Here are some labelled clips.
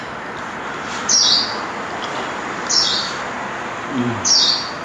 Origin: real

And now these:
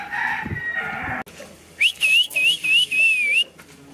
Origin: real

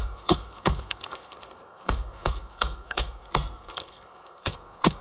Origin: fake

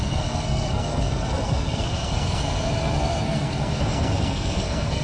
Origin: fake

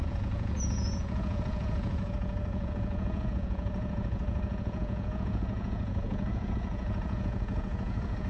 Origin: fake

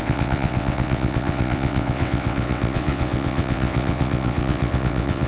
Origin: fake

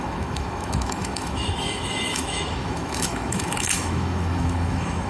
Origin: fake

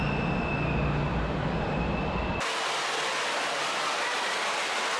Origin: real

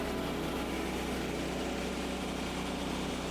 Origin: real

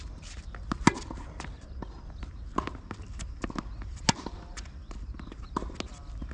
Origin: real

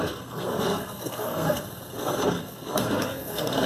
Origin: fake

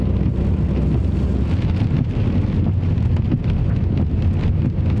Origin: real